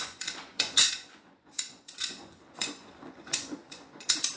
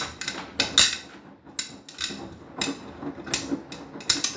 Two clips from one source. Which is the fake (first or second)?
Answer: first